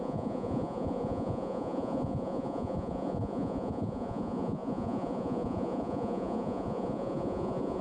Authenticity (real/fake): fake